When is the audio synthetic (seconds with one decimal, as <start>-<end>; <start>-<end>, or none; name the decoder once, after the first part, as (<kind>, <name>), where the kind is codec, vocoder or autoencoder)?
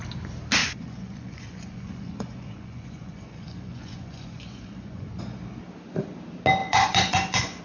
0.6-5.2 (vocoder, Vocos); 6.6-7.6